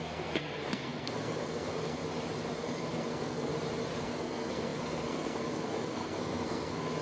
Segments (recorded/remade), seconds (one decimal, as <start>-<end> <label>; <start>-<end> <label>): 0.0-2.0 remade; 2.0-2.6 recorded; 2.6-3.5 remade; 3.5-4.0 recorded; 4.0-7.0 remade